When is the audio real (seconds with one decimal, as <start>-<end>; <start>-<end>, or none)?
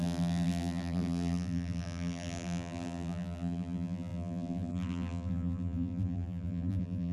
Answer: none